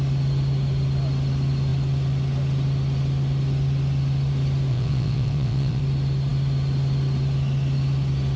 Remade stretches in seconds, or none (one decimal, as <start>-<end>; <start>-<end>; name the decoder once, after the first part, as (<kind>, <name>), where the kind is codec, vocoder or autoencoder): 4.7-5.8 (vocoder, WaveNeXt)